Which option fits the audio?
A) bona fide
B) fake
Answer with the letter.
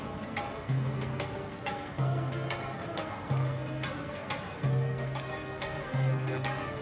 B